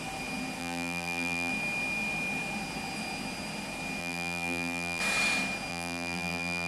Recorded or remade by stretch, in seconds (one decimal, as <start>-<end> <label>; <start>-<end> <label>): 0.0-0.6 recorded; 0.6-1.5 remade; 1.5-4.0 recorded; 4.0-5.0 remade; 5.0-5.7 recorded; 5.7-6.7 remade